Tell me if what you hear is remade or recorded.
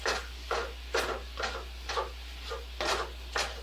recorded